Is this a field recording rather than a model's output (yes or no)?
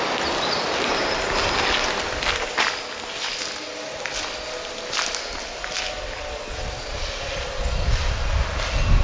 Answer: yes